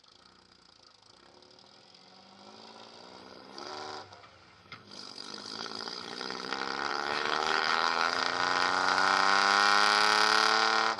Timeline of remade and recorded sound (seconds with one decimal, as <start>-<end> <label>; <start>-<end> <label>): 0.0-3.2 recorded; 3.2-3.7 remade; 3.7-4.6 recorded; 4.6-6.5 remade; 6.5-6.9 recorded; 6.9-8.2 remade; 8.2-11.0 recorded